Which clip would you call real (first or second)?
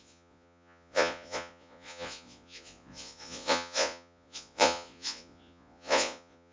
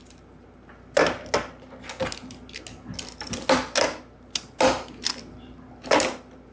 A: second